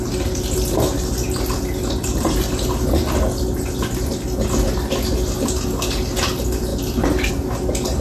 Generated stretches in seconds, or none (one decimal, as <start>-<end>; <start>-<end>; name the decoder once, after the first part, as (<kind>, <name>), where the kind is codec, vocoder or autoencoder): none